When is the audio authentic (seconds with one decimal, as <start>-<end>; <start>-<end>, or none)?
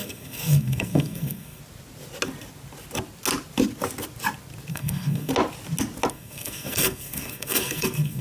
1.6-4.7; 5.3-6.1